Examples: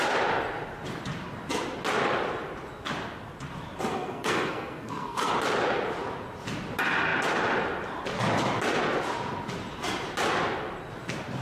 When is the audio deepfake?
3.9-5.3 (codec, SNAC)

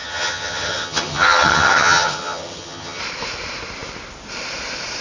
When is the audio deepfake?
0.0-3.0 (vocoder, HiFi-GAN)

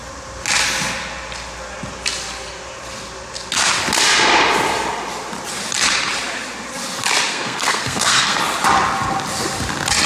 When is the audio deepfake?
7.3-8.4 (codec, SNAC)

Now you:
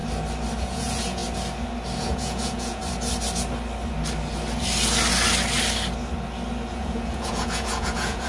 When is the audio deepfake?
0.6-1.2 (vocoder, Vocos); 2.0-2.8; 6.7-8.3